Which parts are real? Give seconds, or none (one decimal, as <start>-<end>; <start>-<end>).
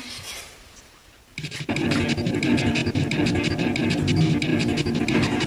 0.0-5.5